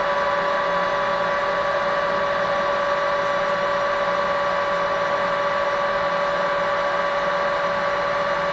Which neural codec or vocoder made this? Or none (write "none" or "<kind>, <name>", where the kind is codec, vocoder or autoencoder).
none